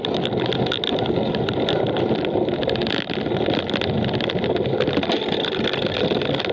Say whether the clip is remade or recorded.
recorded